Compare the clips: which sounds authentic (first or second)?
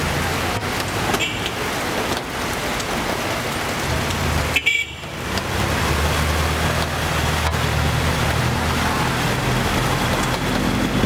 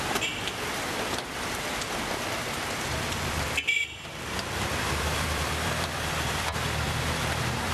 first